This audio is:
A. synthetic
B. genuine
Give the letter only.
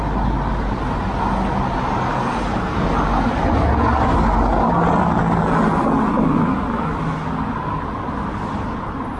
B